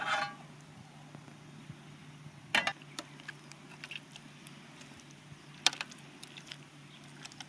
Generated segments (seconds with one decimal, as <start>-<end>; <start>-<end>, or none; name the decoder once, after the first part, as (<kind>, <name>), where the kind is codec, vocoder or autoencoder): none